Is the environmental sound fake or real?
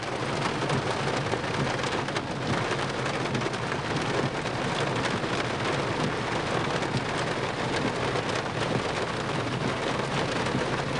real